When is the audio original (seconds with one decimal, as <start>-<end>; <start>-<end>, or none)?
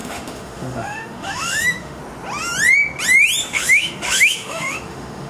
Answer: 2.0-3.4